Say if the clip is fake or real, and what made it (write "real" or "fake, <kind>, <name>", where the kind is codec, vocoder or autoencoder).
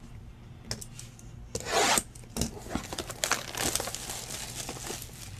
real